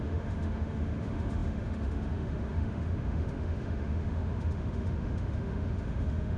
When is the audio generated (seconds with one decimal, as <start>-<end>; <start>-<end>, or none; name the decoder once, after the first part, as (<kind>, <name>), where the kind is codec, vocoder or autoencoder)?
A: 0.0-6.4 (autoencoder, DAC-VAE)